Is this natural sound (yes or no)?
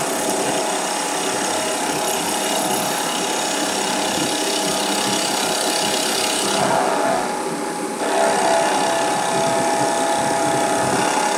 yes